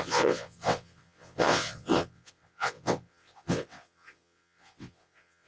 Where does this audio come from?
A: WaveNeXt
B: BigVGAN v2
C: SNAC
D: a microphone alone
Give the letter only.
A